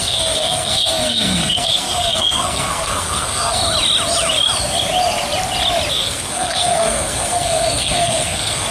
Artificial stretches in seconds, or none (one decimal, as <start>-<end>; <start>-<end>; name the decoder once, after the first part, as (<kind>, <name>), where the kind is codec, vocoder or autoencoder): 0.0-3.6 (codec, SNAC); 5.9-8.7